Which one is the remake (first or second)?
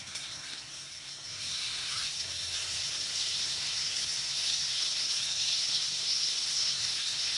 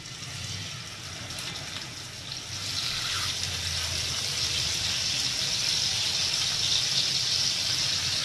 first